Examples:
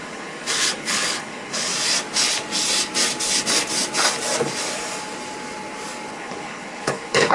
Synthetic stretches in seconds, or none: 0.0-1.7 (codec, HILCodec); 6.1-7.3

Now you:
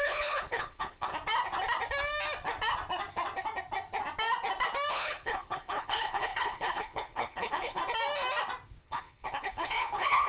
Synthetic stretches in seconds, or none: 0.0-1.1 (codec, HILCodec); 4.9-7.8; 8.8-10.3